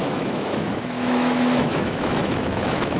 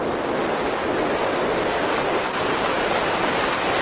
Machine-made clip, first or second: first